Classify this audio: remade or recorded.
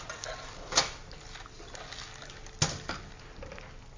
recorded